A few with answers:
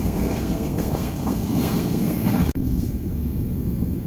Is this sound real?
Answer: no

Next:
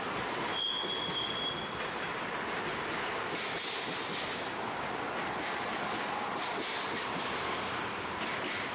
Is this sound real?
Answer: yes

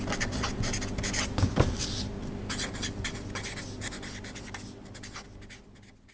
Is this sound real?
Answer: yes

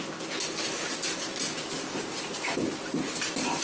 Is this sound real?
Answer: yes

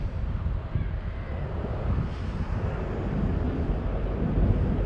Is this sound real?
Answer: yes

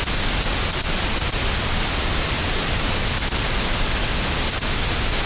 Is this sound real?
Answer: yes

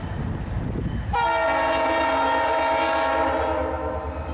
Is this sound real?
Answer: yes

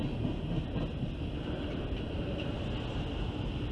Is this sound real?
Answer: yes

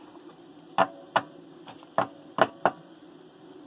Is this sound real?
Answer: yes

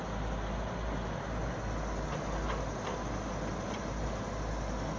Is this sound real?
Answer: yes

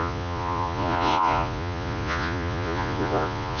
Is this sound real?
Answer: no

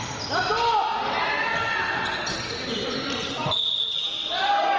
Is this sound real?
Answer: yes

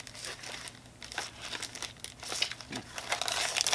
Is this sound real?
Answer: yes